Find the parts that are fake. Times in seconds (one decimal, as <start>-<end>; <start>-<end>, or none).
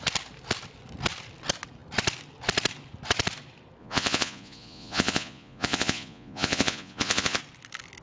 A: 3.8-7.4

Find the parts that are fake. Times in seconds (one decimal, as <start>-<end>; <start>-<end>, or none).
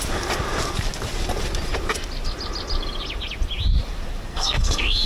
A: 4.3-5.1